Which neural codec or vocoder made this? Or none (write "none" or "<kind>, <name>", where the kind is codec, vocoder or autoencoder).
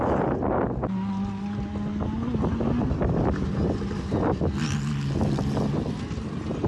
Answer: none